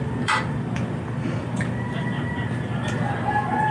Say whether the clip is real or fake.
fake